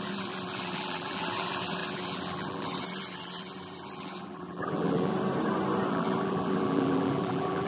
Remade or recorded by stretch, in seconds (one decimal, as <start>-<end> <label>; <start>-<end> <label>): 0.0-5.1 remade; 5.1-5.9 recorded; 5.9-7.7 remade